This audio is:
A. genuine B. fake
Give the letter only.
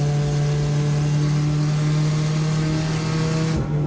A